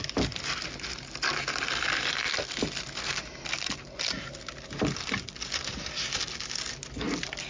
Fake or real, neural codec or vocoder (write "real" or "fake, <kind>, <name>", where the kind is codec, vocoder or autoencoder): real